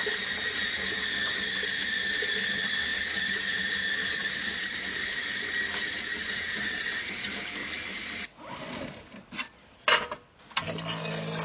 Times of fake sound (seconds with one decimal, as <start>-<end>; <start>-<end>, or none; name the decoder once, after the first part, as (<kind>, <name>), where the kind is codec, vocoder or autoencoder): 6.1-7.1 (vocoder, WaveNeXt)